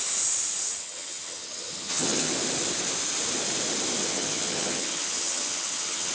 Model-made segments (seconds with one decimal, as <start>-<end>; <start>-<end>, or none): 0.8-2.3; 4.0-6.1